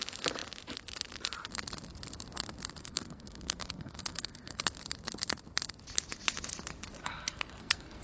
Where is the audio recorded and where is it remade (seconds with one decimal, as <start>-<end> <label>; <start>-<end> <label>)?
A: 0.0-2.8 recorded; 2.8-4.6 remade; 4.6-7.0 recorded; 7.0-8.0 remade

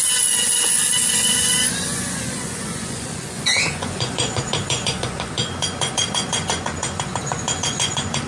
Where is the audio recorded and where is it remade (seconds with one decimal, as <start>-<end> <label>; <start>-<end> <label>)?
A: 0.0-8.3 remade

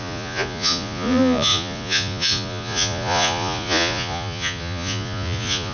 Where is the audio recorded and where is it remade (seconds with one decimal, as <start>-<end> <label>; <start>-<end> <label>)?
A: 0.0-5.7 remade

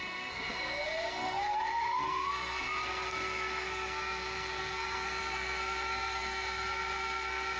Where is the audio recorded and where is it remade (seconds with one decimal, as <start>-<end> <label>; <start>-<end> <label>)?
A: 0.0-7.6 remade

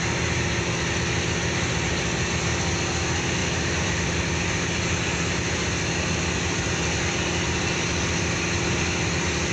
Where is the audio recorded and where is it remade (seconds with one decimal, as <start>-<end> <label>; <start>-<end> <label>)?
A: 0.0-3.4 recorded; 3.4-3.9 remade; 3.9-9.5 recorded